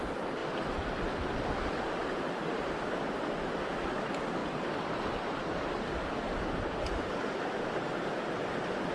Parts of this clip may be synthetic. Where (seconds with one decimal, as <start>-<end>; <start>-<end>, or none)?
0.0-0.4; 3.6-8.9